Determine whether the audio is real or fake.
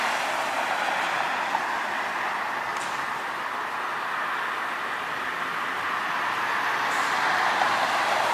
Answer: real